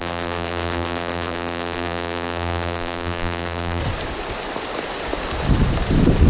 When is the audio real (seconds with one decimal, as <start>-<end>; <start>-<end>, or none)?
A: 3.8-6.3